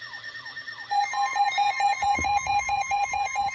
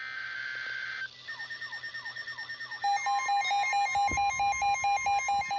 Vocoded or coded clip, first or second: first